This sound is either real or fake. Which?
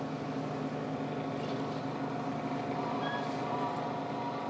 real